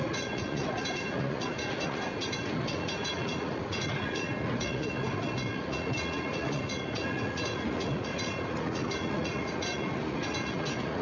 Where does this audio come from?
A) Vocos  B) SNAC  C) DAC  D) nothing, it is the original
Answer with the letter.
A